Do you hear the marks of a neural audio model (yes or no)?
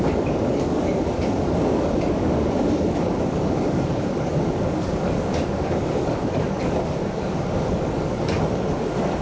yes